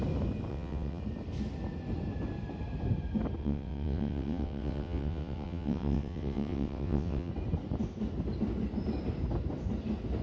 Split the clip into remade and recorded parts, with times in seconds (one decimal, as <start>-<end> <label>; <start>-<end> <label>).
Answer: 0.0-0.5 recorded; 0.5-1.0 remade; 1.0-3.4 recorded; 3.4-7.3 remade; 7.3-10.2 recorded